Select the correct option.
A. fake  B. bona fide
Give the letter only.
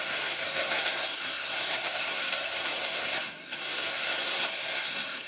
A